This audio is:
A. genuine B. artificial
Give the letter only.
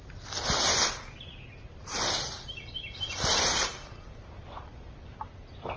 A